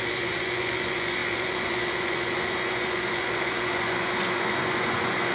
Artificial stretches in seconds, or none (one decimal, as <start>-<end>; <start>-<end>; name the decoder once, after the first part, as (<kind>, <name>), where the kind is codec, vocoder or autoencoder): 0.0-5.3 (vocoder, Vocos)